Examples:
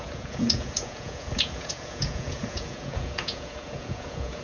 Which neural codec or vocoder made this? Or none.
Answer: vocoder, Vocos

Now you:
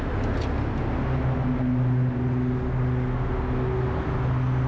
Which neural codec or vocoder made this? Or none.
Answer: none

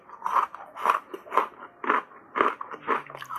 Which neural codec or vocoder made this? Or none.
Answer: none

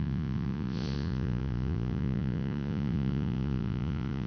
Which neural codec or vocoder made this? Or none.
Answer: vocoder, Vocos